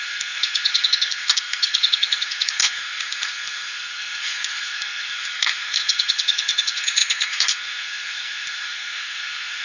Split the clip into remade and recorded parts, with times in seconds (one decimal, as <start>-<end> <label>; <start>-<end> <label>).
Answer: 0.0-9.6 remade